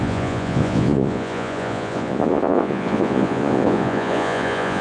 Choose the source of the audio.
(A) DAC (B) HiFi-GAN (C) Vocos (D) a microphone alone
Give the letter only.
C